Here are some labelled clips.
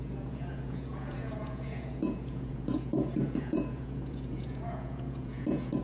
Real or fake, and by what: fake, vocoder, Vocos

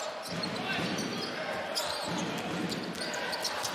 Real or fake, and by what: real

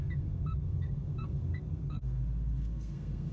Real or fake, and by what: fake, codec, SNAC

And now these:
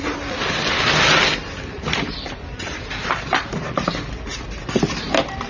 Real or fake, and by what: fake, vocoder, BigVGAN v2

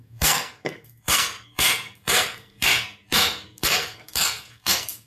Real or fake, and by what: fake, codec, SNAC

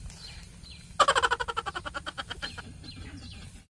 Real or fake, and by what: real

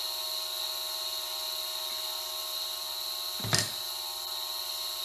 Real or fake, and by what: real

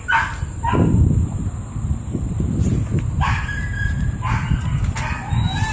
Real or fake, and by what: real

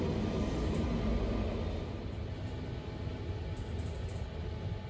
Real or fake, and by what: real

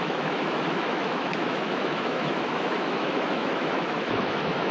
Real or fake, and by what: fake, autoencoder, DAC-VAE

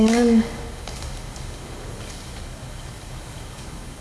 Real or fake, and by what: fake, codec, DAC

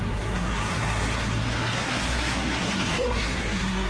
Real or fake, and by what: fake, codec, SNAC